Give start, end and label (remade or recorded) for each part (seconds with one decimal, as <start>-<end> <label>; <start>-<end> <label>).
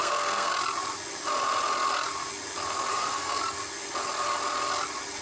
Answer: 0.0-0.5 remade; 0.5-2.9 recorded; 2.9-3.4 remade; 3.4-5.2 recorded